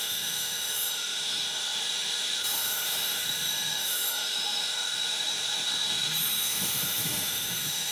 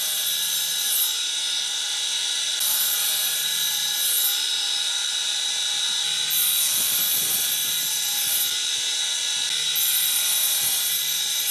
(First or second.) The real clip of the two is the second